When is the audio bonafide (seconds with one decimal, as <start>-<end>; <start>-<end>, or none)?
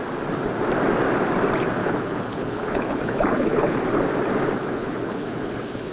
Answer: 0.0-1.8; 3.8-4.6